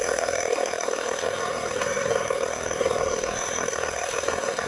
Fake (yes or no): yes